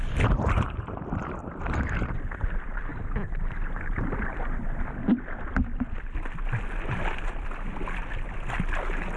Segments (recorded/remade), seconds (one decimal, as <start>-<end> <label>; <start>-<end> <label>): 0.0-9.2 recorded